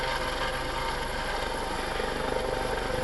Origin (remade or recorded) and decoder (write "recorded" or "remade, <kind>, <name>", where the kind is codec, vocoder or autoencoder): recorded